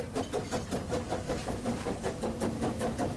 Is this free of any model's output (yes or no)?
yes